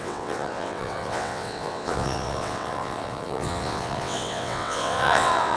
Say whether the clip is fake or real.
fake